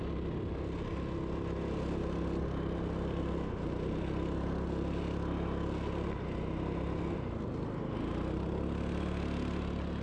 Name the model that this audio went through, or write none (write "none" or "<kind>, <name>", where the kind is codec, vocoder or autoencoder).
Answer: none